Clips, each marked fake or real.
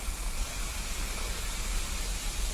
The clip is real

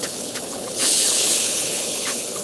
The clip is fake